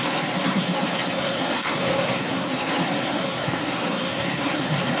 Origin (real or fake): fake